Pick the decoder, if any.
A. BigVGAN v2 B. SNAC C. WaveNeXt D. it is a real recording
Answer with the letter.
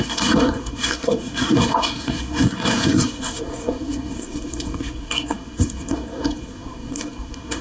B